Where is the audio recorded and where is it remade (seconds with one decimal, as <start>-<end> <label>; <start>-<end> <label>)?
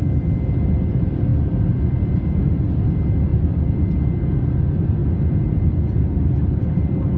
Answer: 0.0-1.3 recorded; 1.3-1.9 remade; 1.9-3.3 recorded; 3.3-4.1 remade; 4.1-7.2 recorded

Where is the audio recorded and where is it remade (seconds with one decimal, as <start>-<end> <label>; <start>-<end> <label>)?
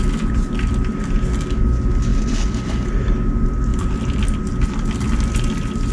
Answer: 0.0-2.1 recorded; 2.1-2.9 remade; 2.9-3.7 recorded; 3.7-4.4 remade; 4.4-5.9 recorded